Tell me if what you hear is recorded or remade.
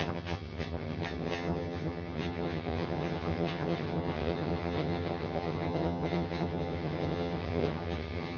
remade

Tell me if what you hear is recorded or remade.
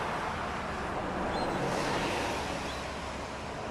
recorded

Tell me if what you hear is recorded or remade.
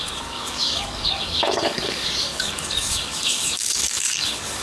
remade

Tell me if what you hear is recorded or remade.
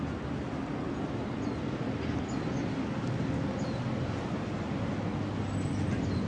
recorded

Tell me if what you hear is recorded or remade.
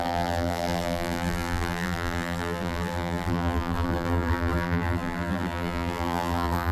remade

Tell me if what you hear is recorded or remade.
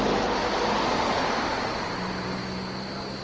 recorded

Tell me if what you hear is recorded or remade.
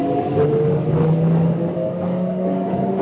remade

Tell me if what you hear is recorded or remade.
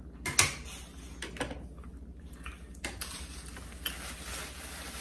recorded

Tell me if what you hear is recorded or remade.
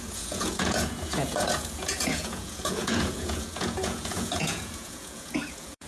remade